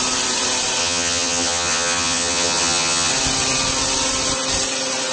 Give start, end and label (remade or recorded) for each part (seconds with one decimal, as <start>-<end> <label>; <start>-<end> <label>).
0.0-0.8 recorded; 0.8-3.1 remade; 3.1-5.1 recorded